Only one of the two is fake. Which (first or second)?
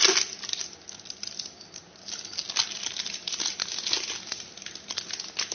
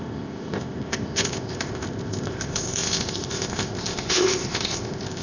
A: second